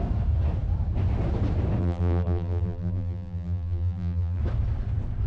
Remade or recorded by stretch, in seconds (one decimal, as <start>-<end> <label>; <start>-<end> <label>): 0.0-1.8 recorded; 1.8-4.4 remade; 4.4-5.3 recorded